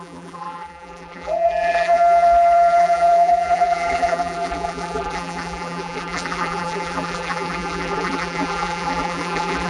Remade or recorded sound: remade